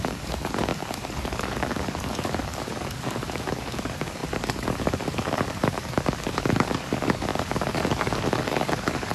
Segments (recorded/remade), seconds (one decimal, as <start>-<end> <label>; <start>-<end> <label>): 0.0-9.1 remade